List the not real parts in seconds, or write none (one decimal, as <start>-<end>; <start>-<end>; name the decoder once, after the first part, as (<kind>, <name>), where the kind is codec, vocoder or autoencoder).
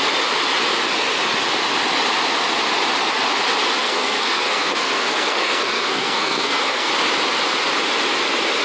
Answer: 3.8-6.9 (codec, SNAC)